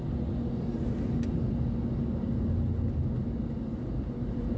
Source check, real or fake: real